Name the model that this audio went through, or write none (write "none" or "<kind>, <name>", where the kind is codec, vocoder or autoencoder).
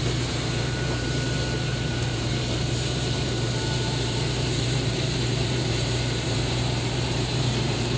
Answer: vocoder, BigVGAN v2